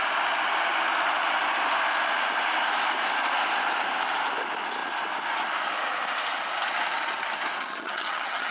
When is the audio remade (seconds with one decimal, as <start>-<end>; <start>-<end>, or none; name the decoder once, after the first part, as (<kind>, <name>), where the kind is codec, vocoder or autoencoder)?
7.6-8.5 (vocoder, HiFi-GAN)